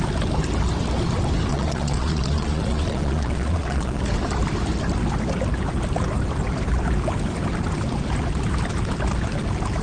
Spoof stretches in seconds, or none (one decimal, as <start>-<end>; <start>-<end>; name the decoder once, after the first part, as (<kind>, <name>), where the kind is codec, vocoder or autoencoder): 1.5-4.0 (vocoder, Vocos)